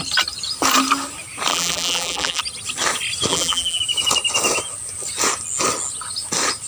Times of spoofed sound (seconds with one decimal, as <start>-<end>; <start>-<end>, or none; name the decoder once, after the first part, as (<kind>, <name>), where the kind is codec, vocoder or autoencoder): 1.5-2.4 (vocoder, BigVGAN v2); 3.3-3.8